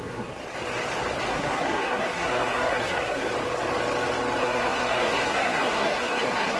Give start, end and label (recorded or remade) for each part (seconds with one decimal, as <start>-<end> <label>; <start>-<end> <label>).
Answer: 0.0-0.4 remade; 0.4-1.3 recorded; 1.3-3.3 remade; 3.3-4.4 recorded; 4.4-6.6 remade